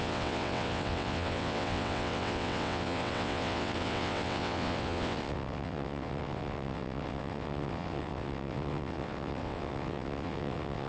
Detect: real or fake fake